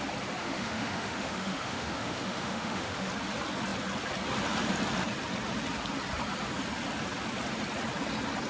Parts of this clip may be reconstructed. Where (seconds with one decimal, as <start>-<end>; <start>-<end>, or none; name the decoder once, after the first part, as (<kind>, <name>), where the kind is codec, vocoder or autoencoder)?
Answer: 0.4-3.1 (autoencoder, DAC-VAE)